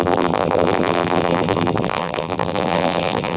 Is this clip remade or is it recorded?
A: remade